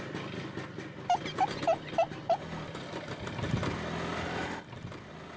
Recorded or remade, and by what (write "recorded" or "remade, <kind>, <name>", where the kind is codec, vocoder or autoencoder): recorded